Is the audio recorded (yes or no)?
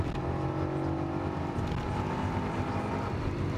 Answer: yes